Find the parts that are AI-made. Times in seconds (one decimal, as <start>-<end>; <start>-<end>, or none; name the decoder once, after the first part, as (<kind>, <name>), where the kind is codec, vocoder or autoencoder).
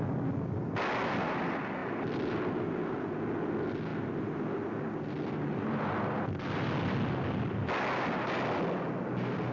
none